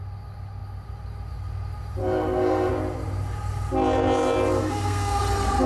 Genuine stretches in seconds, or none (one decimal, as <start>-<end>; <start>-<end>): 0.0-2.0; 2.7-4.6; 5.2-5.7